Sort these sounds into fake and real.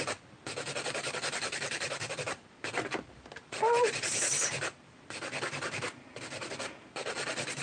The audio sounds real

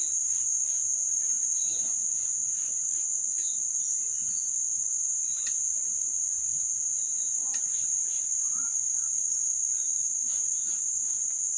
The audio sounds real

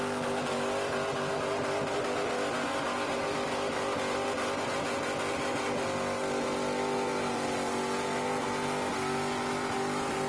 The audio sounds real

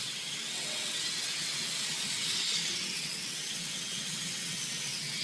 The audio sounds fake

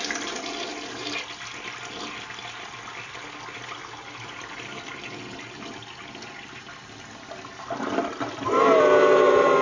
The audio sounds real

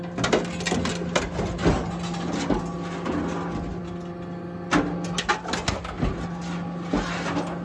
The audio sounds real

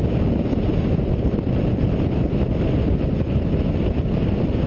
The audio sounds real